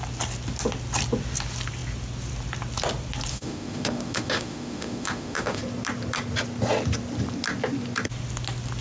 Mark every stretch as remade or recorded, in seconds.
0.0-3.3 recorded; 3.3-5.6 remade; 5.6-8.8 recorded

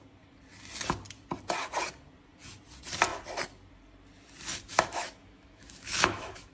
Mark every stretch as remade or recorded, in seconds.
0.0-4.7 recorded; 4.7-6.5 remade

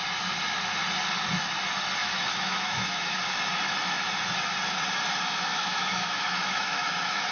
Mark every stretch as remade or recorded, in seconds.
0.0-2.0 recorded; 2.0-3.2 remade; 3.2-5.5 recorded; 5.5-7.3 remade

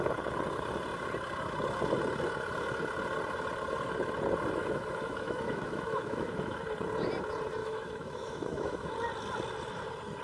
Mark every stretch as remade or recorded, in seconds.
0.0-4.6 recorded; 4.6-6.6 remade; 6.6-7.6 recorded; 7.6-8.9 remade; 8.9-10.2 recorded

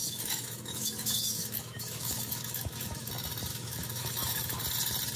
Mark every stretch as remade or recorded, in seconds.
0.0-3.1 remade; 3.1-3.5 recorded; 3.5-4.6 remade; 4.6-5.2 recorded

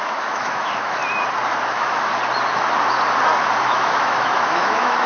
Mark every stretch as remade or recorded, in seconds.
0.0-1.0 remade; 1.0-1.7 recorded; 1.7-2.1 remade; 2.1-3.6 recorded; 3.6-5.1 remade

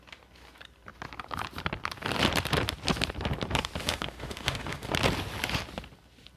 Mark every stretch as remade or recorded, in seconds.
0.0-3.8 recorded; 3.8-4.9 remade; 4.9-6.4 recorded

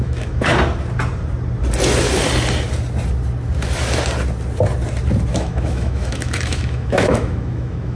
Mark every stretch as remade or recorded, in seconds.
0.0-0.5 remade; 0.5-5.3 recorded; 5.3-8.0 remade